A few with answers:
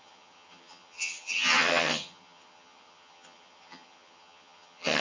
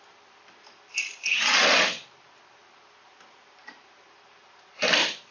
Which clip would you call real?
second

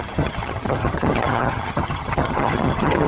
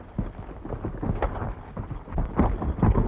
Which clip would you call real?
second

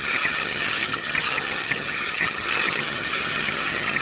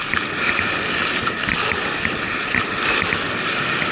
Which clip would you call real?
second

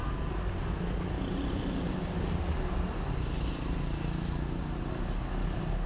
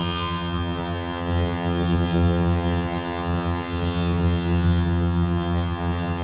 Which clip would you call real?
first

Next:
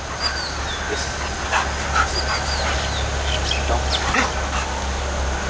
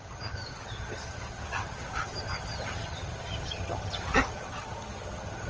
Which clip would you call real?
first